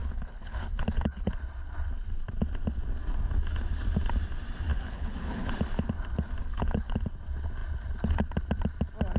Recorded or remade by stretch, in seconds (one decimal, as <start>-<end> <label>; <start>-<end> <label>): 0.0-1.3 remade; 1.3-4.7 recorded; 4.7-5.5 remade; 5.5-6.4 recorded; 6.4-7.0 remade; 7.0-9.2 recorded